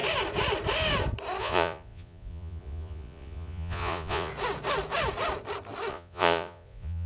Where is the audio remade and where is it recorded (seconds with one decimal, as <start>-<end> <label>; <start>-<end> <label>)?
0.0-1.4 recorded; 1.4-4.3 remade; 4.3-5.9 recorded; 5.9-7.1 remade